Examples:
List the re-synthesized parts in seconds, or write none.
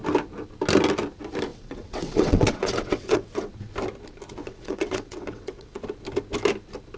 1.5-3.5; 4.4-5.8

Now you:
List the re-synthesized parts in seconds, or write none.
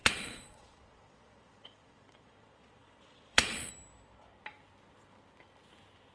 0.0-3.7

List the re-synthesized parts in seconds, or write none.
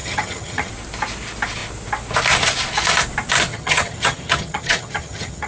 0.0-0.7; 3.5-5.5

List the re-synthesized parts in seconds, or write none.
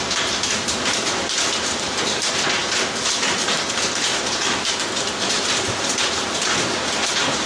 none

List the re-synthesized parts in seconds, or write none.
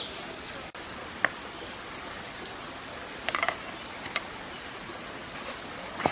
none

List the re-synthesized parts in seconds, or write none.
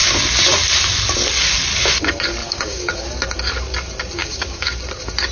2.4-3.1; 4.2-4.7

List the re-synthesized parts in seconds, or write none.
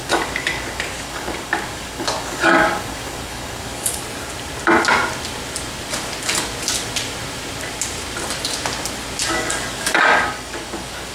0.0-4.0; 9.3-11.1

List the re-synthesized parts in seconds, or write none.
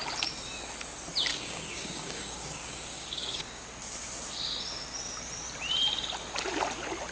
1.3-3.7